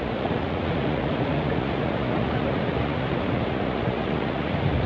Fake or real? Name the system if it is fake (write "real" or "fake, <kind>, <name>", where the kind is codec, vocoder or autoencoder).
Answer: fake, vocoder, Vocos